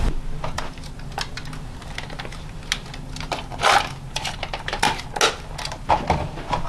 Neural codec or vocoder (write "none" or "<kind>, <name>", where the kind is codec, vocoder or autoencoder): none